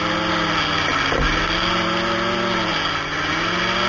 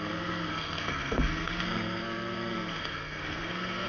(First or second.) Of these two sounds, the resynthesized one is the second